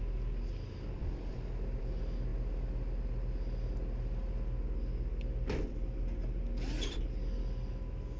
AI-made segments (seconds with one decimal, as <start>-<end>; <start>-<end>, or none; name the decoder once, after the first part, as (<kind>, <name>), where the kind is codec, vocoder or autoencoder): none